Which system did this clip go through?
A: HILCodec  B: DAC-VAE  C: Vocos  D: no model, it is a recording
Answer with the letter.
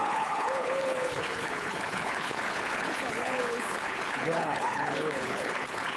A